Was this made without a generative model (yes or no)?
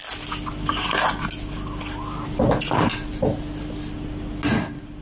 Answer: yes